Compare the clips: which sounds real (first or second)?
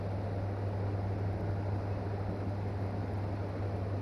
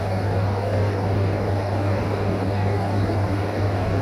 first